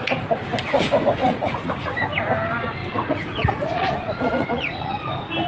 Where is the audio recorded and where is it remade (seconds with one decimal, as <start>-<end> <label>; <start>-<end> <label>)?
0.0-1.2 recorded; 1.2-1.9 remade; 1.9-2.8 recorded; 2.8-5.1 remade; 5.1-5.5 recorded